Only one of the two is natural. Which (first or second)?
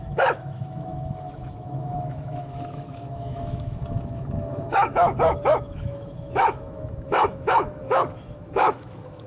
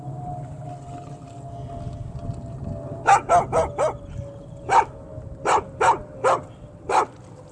second